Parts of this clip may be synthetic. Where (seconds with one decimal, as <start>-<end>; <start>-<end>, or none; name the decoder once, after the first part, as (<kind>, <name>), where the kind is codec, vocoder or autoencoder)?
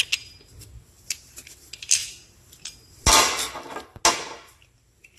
none